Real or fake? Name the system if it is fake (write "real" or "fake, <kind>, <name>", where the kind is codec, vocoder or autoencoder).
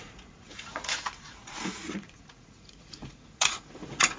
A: fake, vocoder, Vocos